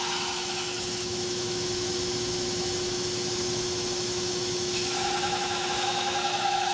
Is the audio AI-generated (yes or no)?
yes